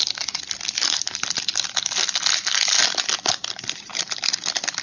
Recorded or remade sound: recorded